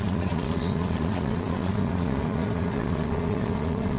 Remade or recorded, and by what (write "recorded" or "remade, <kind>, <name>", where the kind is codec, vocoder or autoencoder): remade, vocoder, Vocos